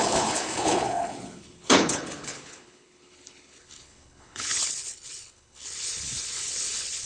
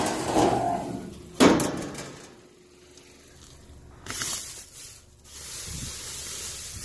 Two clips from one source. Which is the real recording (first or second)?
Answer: second